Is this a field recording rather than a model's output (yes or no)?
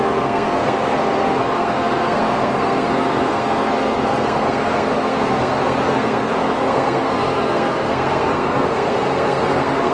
no